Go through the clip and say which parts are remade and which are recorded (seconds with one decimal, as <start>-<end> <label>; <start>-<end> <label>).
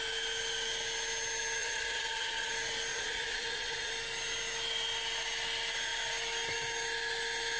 0.0-1.6 recorded; 1.6-2.5 remade; 2.5-2.9 recorded; 2.9-3.9 remade; 3.9-7.6 recorded